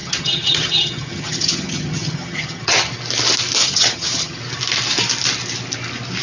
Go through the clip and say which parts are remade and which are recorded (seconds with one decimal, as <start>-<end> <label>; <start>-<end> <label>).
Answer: 0.0-2.9 remade; 2.9-3.6 recorded; 3.6-4.4 remade; 4.4-6.2 recorded